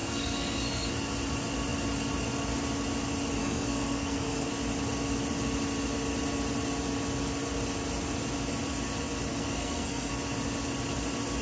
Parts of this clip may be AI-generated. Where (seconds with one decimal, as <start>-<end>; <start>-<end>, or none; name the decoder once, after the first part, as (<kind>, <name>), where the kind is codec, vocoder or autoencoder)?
0.0-0.9 (codec, SNAC); 3.4-4.5; 9.3-10.1